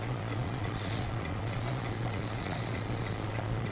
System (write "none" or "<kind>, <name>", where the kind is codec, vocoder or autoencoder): vocoder, Vocos